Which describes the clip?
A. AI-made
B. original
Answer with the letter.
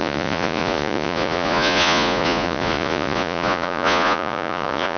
A